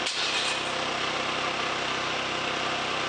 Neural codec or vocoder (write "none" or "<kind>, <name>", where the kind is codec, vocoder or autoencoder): none